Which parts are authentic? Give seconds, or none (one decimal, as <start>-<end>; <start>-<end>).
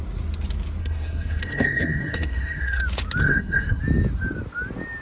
0.0-0.8; 2.8-3.2; 3.8-5.0